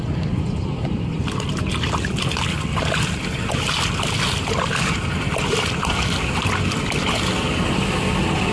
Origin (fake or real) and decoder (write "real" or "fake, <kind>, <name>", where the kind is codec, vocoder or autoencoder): real